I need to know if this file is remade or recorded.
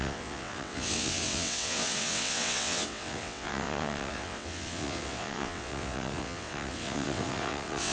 remade